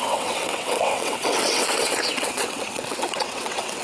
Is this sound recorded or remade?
remade